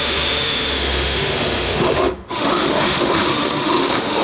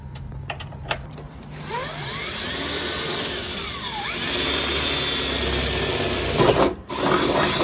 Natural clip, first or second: second